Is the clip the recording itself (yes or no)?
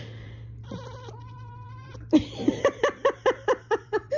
no